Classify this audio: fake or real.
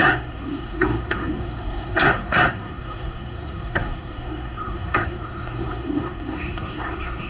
fake